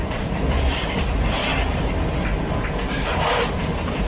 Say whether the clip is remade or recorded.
recorded